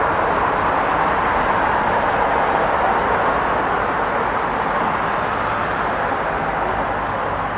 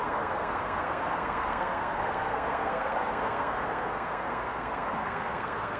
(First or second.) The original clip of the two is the first